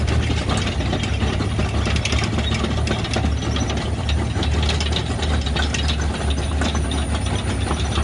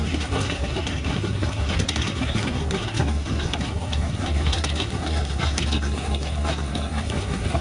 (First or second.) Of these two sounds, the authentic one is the first